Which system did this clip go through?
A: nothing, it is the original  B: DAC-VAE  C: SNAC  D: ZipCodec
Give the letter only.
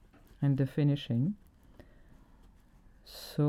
A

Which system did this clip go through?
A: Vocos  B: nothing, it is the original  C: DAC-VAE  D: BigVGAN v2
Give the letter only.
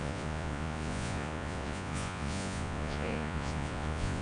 A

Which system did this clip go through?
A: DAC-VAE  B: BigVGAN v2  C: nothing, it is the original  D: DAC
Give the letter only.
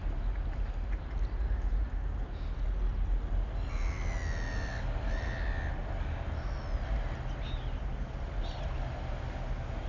C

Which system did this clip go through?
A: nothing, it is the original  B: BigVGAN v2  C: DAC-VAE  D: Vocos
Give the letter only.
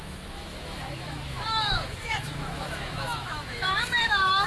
C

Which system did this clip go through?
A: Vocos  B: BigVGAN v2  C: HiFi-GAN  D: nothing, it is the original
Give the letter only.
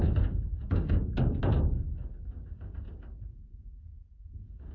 D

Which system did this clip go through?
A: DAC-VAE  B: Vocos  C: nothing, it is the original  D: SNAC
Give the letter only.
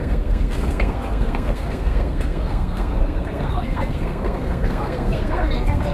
D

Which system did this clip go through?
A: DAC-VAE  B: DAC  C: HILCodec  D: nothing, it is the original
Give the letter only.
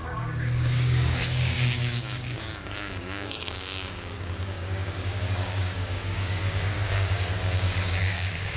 B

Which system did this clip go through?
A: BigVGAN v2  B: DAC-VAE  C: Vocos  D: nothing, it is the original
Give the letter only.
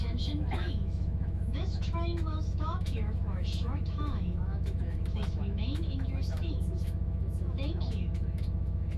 B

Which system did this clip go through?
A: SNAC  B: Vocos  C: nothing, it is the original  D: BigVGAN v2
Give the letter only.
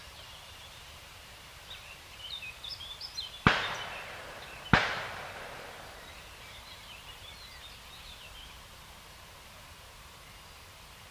D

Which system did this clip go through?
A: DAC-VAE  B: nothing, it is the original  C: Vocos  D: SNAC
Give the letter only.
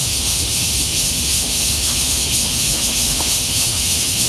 A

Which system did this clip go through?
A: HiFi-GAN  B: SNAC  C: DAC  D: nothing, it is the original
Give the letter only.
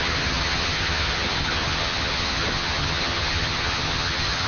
A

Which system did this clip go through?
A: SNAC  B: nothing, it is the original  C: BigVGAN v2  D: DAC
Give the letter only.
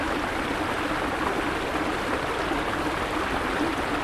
B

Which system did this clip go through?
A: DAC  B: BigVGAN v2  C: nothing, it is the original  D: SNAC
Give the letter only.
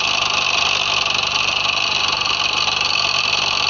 C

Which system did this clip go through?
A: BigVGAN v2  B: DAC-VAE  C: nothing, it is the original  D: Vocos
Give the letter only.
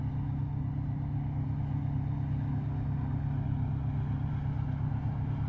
C